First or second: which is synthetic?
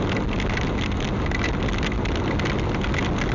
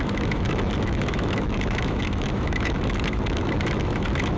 second